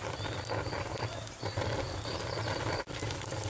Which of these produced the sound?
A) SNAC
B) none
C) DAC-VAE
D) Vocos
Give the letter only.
B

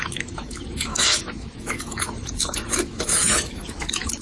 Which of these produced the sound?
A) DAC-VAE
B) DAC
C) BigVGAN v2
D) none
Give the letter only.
A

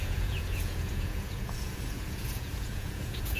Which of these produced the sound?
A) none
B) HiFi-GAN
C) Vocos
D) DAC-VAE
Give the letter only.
C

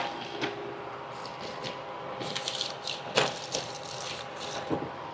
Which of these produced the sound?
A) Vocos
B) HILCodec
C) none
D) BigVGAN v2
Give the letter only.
D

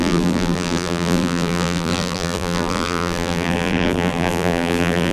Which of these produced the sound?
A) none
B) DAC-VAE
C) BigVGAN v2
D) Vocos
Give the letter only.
C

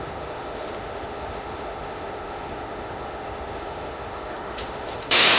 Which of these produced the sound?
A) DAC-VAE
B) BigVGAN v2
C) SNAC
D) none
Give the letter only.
A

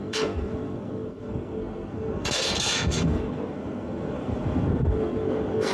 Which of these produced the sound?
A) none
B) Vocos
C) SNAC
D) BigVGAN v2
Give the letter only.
C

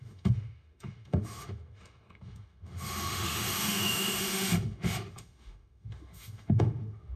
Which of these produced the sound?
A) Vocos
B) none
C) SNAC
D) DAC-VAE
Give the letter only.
D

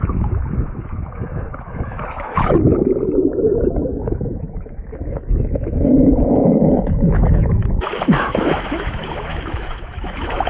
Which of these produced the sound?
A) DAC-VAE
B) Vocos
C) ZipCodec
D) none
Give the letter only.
A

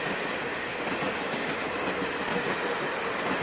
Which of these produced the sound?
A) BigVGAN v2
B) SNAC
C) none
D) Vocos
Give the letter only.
C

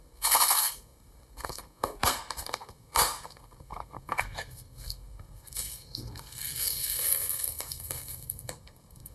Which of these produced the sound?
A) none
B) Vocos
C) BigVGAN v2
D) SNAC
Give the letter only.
D